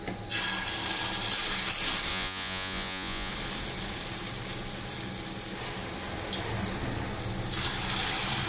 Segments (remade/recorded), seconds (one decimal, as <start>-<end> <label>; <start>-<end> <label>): 0.0-2.1 recorded; 2.1-3.3 remade; 3.3-8.5 recorded